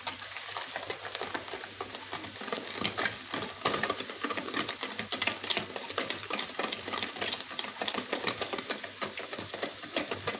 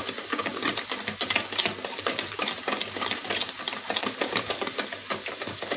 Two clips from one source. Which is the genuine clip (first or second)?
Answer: second